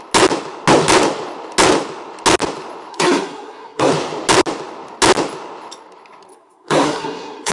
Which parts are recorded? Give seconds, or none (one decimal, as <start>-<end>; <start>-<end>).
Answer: 0.0-2.9; 3.9-6.3